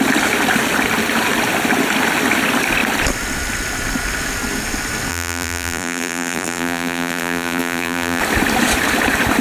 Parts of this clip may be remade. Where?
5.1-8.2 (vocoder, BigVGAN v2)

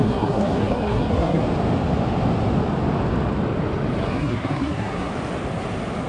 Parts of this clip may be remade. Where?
0.0-1.4 (codec, SNAC); 4.0-5.1

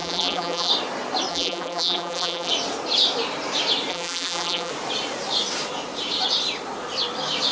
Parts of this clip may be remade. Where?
0.0-0.7 (vocoder, BigVGAN v2); 1.3-2.5; 3.9-4.7

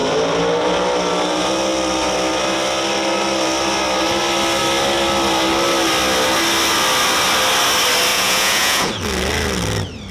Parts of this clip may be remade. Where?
8.1-8.9 (vocoder, Vocos)

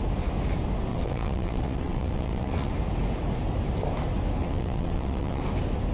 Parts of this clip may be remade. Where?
0.9-2.7 (vocoder, WaveNeXt); 4.4-5.4

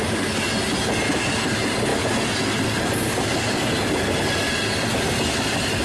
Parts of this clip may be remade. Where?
none

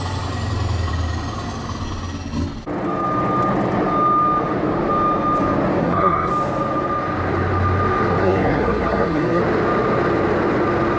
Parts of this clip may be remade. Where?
5.8-6.3 (codec, SNAC); 8.2-9.4

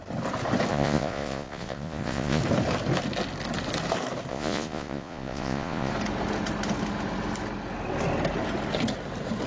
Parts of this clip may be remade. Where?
0.7-2.4 (vocoder, Vocos); 4.3-5.9